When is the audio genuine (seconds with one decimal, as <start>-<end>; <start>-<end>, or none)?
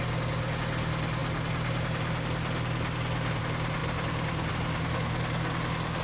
0.0-6.0